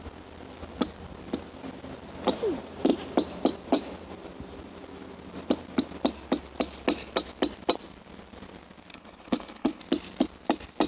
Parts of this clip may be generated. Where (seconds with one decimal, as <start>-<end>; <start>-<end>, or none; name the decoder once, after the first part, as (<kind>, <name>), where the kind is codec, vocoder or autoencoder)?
8.9-9.8 (codec, HILCodec)